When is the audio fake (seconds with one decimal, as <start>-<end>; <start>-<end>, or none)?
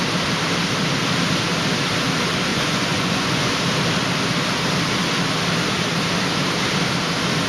2.5-3.5